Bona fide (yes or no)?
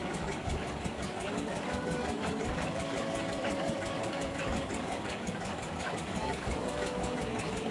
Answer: no